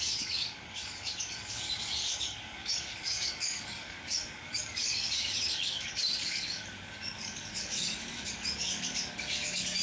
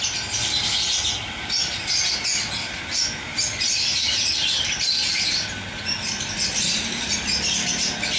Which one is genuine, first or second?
second